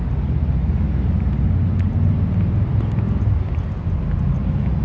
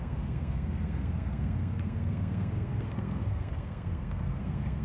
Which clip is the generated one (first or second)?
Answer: second